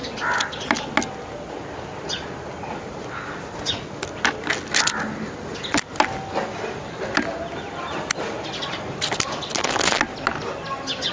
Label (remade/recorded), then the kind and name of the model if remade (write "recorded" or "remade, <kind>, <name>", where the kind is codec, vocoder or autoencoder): recorded